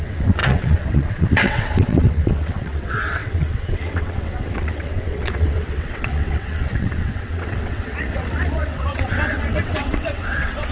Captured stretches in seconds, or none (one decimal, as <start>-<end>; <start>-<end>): none